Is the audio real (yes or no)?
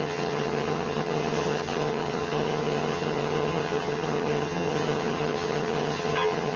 no